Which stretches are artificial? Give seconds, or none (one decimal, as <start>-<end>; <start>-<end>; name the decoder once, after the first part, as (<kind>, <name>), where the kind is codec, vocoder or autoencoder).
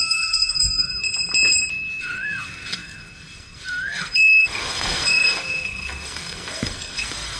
0.0-0.9 (codec, SNAC); 2.0-7.4